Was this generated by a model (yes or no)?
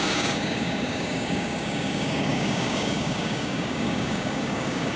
yes